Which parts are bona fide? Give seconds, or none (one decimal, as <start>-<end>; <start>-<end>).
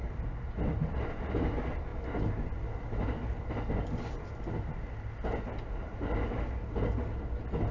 0.0-7.7